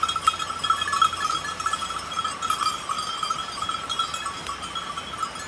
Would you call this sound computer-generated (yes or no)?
no